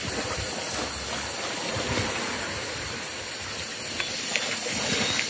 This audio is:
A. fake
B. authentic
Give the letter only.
B